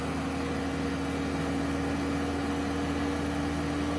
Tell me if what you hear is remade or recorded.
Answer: recorded